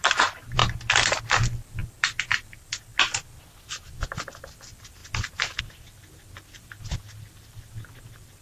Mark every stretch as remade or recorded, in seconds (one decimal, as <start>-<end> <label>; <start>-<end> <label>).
0.0-2.9 remade; 2.9-3.5 recorded; 3.5-5.0 remade; 5.0-5.6 recorded; 5.6-8.4 remade